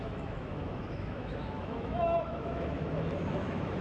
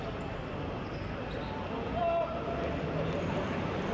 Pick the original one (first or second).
second